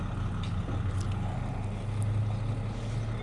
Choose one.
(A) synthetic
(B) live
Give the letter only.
B